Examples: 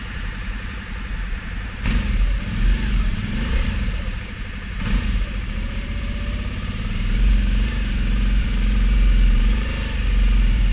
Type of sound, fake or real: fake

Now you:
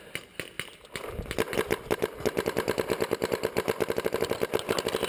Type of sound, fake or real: real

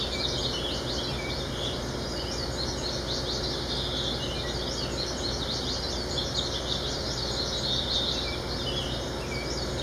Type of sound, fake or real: real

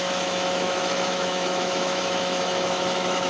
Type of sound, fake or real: fake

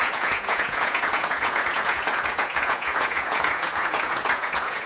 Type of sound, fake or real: fake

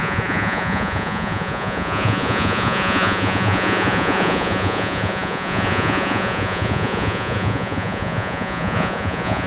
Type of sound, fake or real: fake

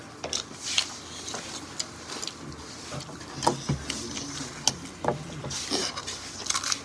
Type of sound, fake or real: real